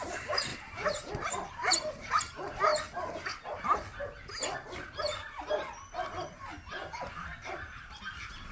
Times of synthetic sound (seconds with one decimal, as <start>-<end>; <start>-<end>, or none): 0.0-0.5; 1.5-2.7; 7.5-8.5